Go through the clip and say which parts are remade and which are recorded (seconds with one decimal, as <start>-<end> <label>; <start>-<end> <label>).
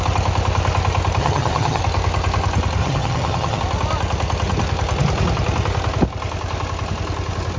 0.0-1.2 recorded; 1.2-1.8 remade; 1.8-2.8 recorded; 2.8-3.6 remade; 3.6-7.6 recorded